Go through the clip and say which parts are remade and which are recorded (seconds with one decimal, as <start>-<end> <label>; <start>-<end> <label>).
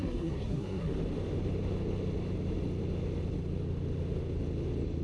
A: 0.0-0.9 remade; 0.9-5.0 recorded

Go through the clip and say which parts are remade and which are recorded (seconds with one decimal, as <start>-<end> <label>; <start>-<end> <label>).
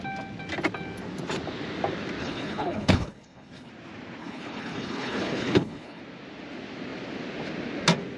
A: 0.0-2.2 recorded; 2.2-3.7 remade; 3.7-4.2 recorded; 4.2-6.0 remade; 6.0-8.2 recorded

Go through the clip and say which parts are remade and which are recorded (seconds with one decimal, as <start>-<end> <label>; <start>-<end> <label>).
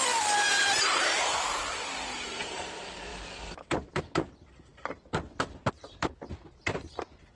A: 0.0-1.6 recorded; 1.6-2.3 remade; 2.3-3.1 recorded; 3.1-4.0 remade; 4.0-4.7 recorded; 4.7-7.0 remade; 7.0-7.4 recorded